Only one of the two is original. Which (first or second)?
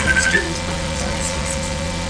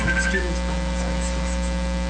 second